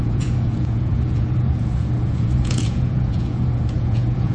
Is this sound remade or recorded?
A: remade